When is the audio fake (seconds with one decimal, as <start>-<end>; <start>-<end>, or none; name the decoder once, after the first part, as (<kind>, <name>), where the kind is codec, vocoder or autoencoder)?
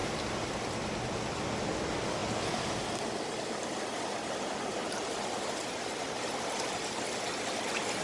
none